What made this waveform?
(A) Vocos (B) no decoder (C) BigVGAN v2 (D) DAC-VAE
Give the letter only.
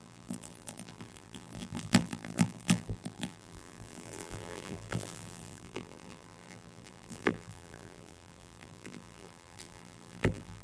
C